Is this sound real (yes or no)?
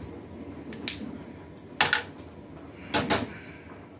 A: yes